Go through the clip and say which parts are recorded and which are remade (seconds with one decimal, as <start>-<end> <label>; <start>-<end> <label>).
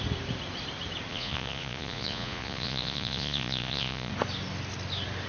0.0-1.1 recorded; 1.1-4.1 remade; 4.1-5.3 recorded